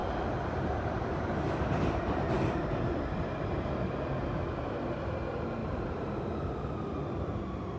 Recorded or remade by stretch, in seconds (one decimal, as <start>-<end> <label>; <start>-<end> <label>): 0.0-3.8 remade; 3.8-5.6 recorded; 5.6-6.5 remade; 6.5-7.8 recorded